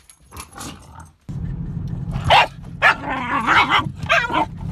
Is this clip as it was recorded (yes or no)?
yes